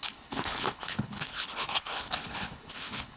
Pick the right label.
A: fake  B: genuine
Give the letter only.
A